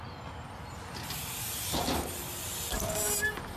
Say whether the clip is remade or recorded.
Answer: recorded